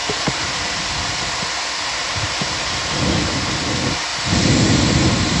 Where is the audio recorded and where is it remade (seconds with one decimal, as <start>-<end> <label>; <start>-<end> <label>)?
0.0-3.2 remade; 3.2-4.1 recorded; 4.1-5.4 remade